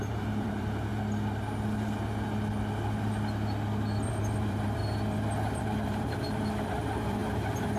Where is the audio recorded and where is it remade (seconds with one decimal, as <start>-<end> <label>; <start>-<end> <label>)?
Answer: 0.0-0.9 remade; 0.9-4.1 recorded; 4.1-4.8 remade; 4.8-5.6 recorded; 5.6-7.8 remade